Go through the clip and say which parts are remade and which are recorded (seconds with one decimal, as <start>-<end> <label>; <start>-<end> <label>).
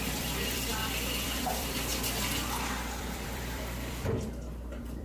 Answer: 0.0-1.9 remade; 1.9-3.0 recorded; 3.0-5.0 remade